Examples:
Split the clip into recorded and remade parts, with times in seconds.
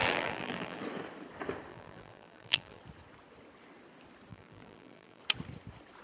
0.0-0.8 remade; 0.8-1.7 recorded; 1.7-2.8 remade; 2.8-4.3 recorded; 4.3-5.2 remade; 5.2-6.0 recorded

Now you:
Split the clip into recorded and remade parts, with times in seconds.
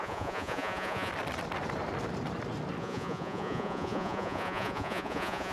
0.0-1.1 remade; 1.1-2.8 recorded; 2.8-5.5 remade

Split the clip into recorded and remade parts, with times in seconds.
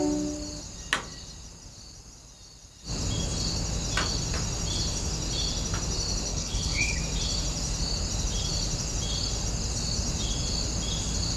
0.0-6.3 recorded; 6.3-7.0 remade; 7.0-11.4 recorded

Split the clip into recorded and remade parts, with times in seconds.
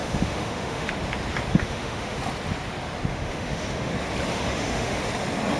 0.0-0.9 remade; 0.9-1.5 recorded; 1.5-2.2 remade; 2.2-3.1 recorded; 3.1-3.9 remade; 3.9-4.3 recorded; 4.3-5.0 remade; 5.0-5.6 recorded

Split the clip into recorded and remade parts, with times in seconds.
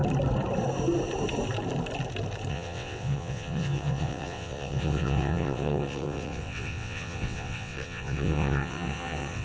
0.0-2.5 recorded; 2.5-9.4 remade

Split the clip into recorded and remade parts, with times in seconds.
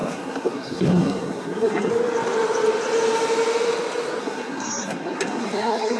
0.0-1.9 remade; 1.9-4.2 recorded; 4.2-6.0 remade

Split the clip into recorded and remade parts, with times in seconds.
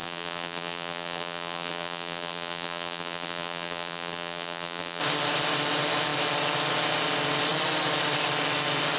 0.0-5.0 remade; 5.0-9.0 recorded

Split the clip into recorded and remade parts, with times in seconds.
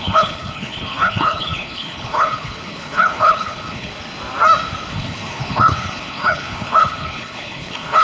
0.0-3.9 remade; 3.9-4.9 recorded; 4.9-8.0 remade